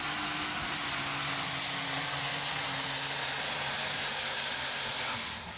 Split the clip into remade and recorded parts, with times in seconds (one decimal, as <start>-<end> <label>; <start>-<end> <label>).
0.0-5.6 recorded